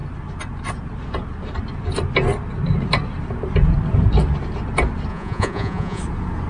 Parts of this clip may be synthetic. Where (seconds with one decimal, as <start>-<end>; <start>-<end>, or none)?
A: 5.1-6.0